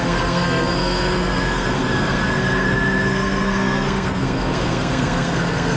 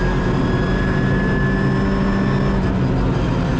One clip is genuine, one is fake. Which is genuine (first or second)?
second